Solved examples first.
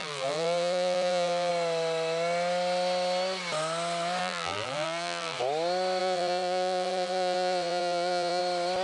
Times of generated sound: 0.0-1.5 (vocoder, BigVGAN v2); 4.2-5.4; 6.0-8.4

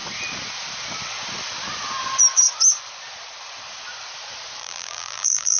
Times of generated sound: 4.6-5.6 (vocoder, BigVGAN v2)

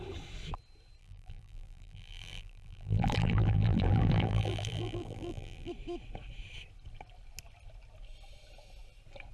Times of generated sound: 1.0-5.7 (vocoder, BigVGAN v2)

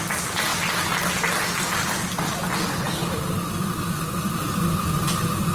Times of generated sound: 0.0-0.5 (vocoder, BigVGAN v2); 2.3-3.0; 3.6-5.5

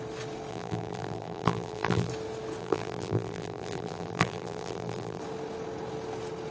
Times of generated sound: 0.5-2.1 (vocoder, BigVGAN v2); 2.6-5.2

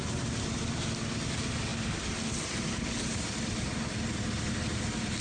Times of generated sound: 0.0-0.6 (vocoder, BigVGAN v2)

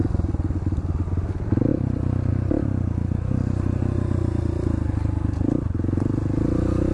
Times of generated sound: 1.7-2.3 (vocoder, BigVGAN v2)

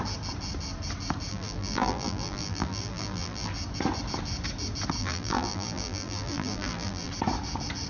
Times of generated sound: 1.3-3.5 (vocoder, BigVGAN v2); 5.0-7.1